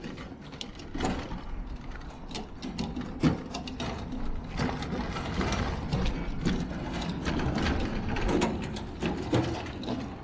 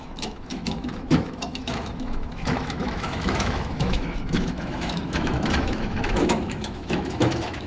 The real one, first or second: first